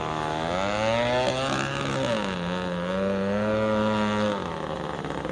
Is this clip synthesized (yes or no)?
no